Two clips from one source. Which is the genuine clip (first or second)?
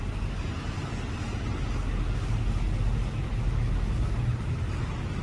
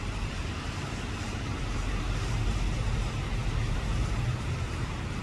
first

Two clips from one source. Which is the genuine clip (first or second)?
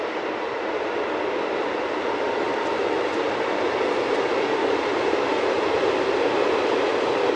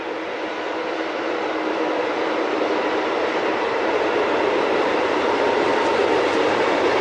first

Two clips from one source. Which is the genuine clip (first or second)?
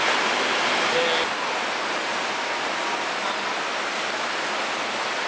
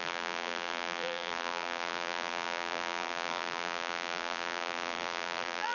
first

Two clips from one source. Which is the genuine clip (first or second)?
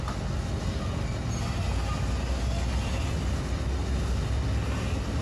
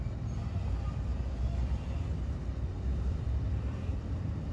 first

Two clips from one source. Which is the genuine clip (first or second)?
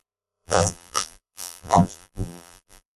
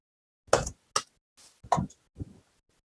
second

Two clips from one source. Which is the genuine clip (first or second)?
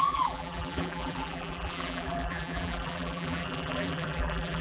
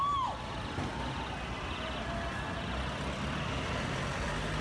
second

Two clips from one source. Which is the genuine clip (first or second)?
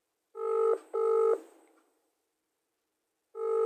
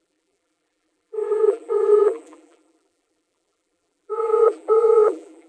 first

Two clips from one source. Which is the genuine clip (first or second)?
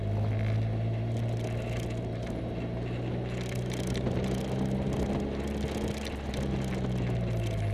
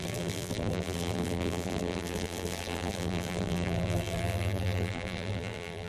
first